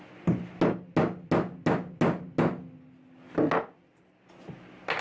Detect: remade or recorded recorded